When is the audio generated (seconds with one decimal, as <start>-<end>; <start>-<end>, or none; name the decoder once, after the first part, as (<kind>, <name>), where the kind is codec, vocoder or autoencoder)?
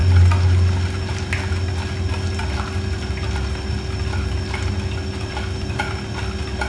none